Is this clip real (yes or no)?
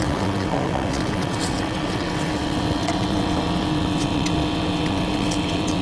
no